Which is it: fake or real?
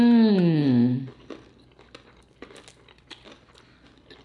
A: real